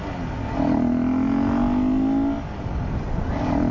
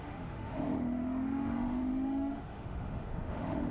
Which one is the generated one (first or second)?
second